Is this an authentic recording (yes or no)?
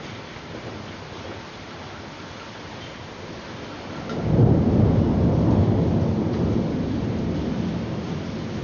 yes